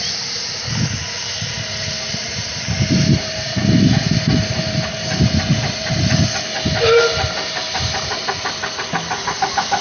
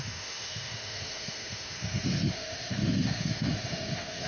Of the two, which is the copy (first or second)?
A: second